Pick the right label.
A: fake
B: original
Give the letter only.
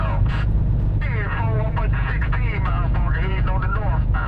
A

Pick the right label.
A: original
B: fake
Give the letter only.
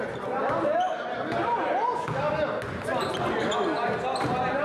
A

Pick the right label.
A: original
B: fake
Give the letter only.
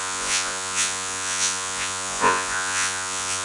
B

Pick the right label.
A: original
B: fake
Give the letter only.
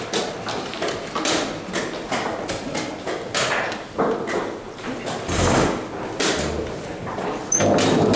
A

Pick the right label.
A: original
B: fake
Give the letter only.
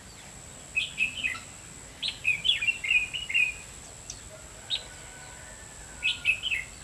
A